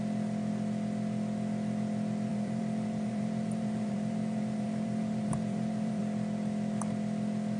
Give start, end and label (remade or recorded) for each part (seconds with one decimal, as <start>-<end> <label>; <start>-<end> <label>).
0.0-2.3 recorded; 2.3-6.0 remade; 6.0-7.6 recorded